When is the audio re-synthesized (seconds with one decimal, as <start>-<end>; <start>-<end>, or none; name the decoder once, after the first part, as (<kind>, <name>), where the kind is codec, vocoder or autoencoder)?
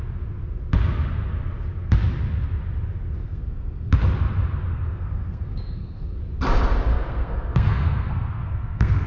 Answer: 3.2-3.9 (codec, SNAC); 4.7-6.2; 6.9-9.1